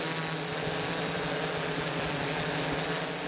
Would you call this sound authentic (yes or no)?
yes